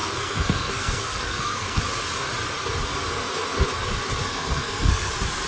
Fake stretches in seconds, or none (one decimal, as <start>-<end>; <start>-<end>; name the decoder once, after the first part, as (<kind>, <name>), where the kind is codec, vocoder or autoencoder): 0.0-1.8 (codec, SNAC); 4.3-5.1

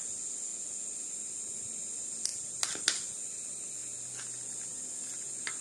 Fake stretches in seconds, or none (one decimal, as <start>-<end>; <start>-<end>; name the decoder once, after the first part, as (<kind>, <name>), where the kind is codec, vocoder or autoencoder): none

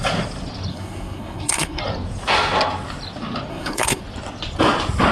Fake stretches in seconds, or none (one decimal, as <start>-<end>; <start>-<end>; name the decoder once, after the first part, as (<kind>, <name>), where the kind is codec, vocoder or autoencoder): 0.7-1.8 (codec, SNAC); 3.5-4.0

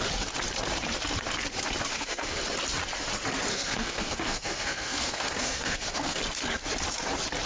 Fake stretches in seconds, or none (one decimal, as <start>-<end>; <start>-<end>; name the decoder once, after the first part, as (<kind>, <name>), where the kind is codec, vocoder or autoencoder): 1.9-2.4 (codec, SNAC); 3.5-6.2

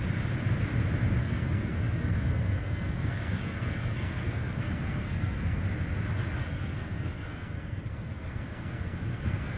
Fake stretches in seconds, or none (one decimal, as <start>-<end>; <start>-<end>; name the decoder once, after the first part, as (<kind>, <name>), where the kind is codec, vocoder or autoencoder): 1.2-5.6 (codec, SNAC); 6.4-9.6